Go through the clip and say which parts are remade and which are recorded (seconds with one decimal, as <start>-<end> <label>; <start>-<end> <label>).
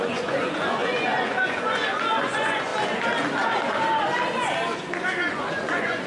0.0-2.7 remade; 2.7-5.3 recorded; 5.3-6.1 remade